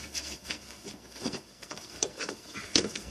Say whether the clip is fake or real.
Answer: fake